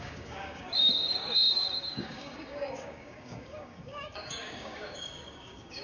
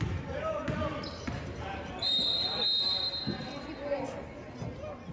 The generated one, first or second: first